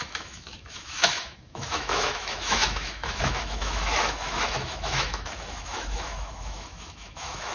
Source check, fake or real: fake